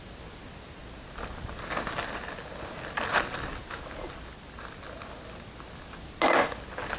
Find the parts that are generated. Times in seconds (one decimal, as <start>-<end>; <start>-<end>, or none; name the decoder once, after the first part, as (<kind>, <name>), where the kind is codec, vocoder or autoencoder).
none